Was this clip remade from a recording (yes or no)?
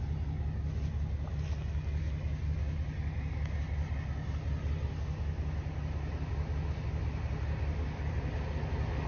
no